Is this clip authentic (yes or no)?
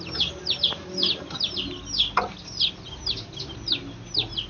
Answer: yes